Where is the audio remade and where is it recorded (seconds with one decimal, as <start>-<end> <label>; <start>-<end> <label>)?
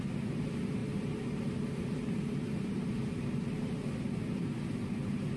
0.0-0.8 recorded; 0.8-4.0 remade; 4.0-5.4 recorded